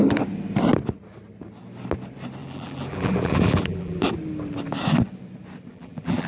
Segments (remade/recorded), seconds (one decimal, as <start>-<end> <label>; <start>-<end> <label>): 0.0-2.4 recorded; 2.4-4.1 remade; 4.1-5.7 recorded; 5.7-6.3 remade